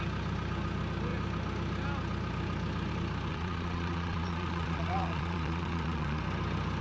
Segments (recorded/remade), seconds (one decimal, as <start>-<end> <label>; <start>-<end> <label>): 0.0-3.3 recorded; 3.3-6.2 remade; 6.2-6.8 recorded